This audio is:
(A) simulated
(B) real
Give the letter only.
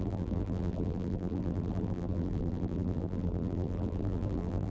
A